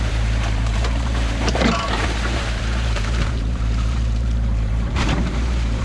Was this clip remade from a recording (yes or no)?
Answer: yes